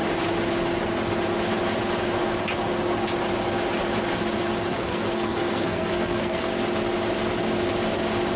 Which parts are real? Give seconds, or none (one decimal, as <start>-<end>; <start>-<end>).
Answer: 0.0-4.7; 6.5-8.4